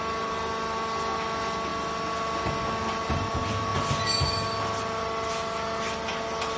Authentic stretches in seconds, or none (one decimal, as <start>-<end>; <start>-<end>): 0.0-6.6

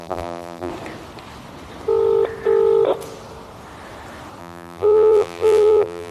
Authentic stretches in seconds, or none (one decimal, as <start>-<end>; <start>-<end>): 0.7-4.4